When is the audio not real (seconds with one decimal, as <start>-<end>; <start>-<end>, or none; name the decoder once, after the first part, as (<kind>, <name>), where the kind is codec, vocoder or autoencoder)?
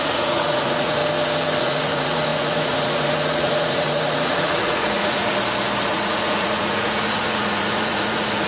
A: 0.0-1.0 (vocoder, Vocos); 1.6-5.3; 5.9-8.5